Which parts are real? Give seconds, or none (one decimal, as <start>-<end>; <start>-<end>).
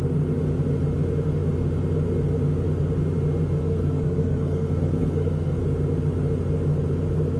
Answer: 0.0-3.6; 5.6-7.4